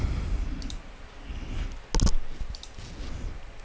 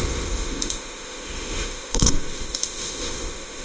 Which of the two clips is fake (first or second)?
second